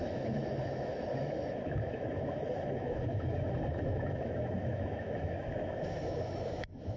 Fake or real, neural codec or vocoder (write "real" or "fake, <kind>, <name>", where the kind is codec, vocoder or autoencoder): fake, autoencoder, DAC-VAE